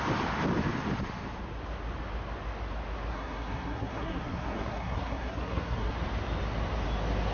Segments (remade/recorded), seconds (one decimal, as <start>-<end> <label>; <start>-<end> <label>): 0.0-3.1 recorded; 3.1-5.9 remade; 5.9-7.3 recorded